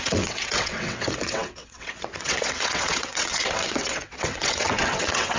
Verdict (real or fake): fake